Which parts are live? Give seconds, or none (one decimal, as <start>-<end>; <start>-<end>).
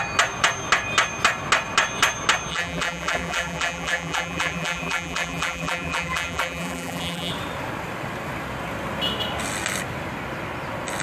0.0-2.5; 7.3-11.0